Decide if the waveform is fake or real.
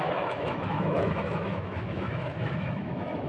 fake